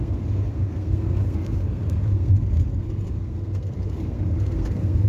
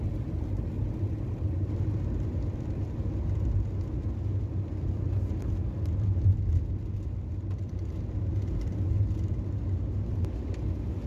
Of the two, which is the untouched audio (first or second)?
second